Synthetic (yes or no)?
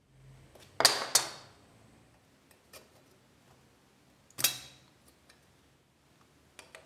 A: no